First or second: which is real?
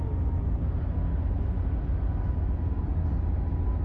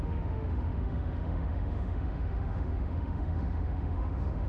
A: first